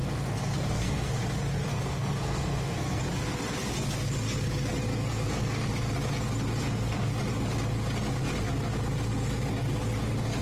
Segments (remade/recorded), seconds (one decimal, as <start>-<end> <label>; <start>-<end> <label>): 0.0-1.2 remade; 1.2-1.7 recorded; 1.7-3.0 remade; 3.0-4.9 recorded; 4.9-5.7 remade; 5.7-6.6 recorded; 6.6-7.1 remade; 7.1-10.4 recorded